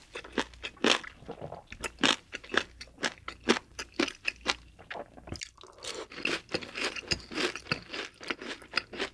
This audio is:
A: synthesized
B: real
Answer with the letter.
B